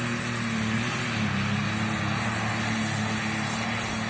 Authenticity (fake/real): real